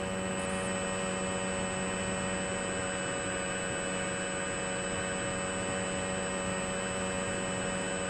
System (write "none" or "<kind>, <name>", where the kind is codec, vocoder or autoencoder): none